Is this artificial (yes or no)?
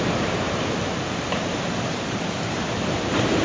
yes